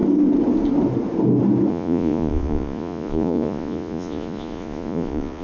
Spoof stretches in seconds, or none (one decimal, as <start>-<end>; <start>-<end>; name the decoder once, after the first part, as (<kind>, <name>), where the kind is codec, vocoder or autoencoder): 1.7-5.4 (vocoder, Vocos)